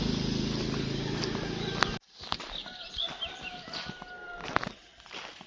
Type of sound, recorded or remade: recorded